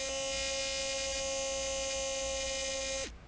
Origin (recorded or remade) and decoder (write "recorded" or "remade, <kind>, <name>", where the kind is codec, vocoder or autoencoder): recorded